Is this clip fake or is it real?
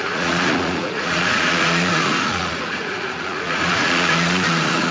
fake